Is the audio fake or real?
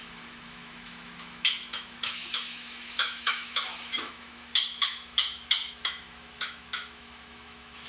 fake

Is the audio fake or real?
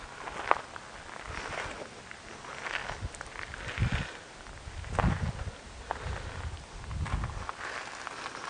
real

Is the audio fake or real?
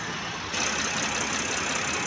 real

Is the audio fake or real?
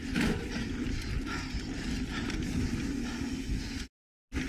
real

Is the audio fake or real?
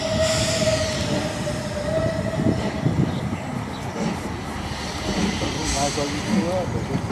real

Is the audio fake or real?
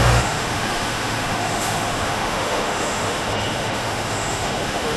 fake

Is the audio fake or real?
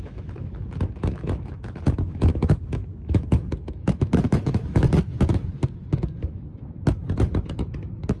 fake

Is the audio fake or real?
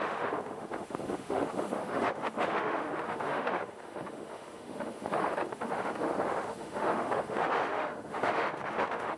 fake